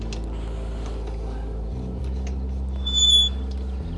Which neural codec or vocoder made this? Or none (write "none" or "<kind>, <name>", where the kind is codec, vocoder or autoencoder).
none